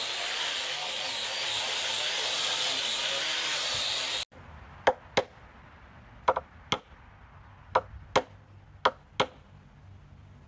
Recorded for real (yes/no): yes